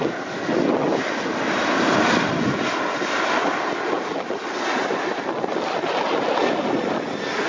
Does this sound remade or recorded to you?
recorded